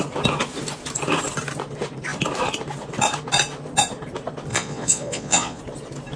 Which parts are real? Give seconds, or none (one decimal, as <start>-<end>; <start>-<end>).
0.0-4.5; 5.6-6.2

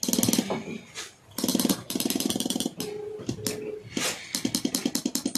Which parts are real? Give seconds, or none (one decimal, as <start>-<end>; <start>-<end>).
0.0-1.5; 3.3-5.4

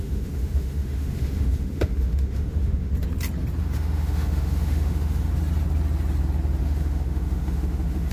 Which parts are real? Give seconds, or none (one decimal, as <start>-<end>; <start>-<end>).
2.9-3.6; 5.3-6.6

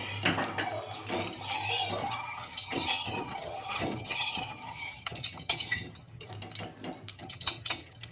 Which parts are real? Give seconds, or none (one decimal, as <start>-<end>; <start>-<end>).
0.0-2.0; 6.3-7.1

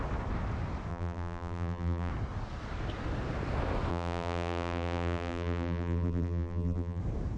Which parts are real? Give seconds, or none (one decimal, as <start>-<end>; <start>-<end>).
0.0-0.9; 2.1-3.9; 7.0-7.4